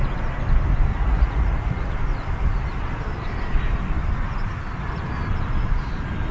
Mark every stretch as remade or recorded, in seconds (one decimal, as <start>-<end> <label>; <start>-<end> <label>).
0.0-0.9 recorded; 0.9-1.9 remade; 1.9-6.3 recorded